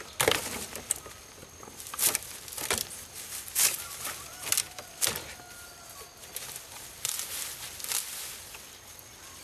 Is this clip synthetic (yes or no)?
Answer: no